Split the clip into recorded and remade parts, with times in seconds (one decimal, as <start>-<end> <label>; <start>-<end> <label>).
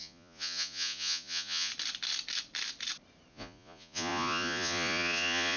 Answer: 0.0-1.7 remade; 1.7-3.3 recorded; 3.3-5.6 remade